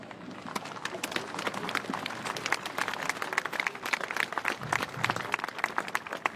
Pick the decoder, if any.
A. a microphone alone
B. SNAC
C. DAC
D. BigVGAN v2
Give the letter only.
A